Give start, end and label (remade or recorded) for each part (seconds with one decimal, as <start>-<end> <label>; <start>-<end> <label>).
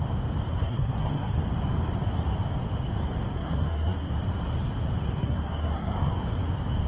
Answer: 0.0-0.5 recorded; 0.5-1.4 remade; 1.4-3.3 recorded; 3.3-4.1 remade; 4.1-5.2 recorded; 5.2-6.1 remade; 6.1-6.9 recorded